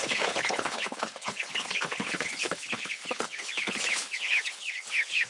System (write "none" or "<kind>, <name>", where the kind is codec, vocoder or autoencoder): codec, HILCodec